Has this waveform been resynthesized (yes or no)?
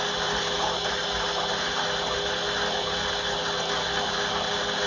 no